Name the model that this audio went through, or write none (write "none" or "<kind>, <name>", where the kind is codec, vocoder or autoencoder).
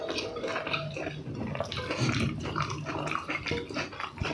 none